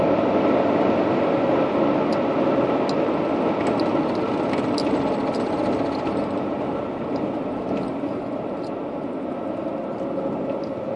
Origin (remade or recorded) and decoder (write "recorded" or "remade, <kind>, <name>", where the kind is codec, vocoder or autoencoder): recorded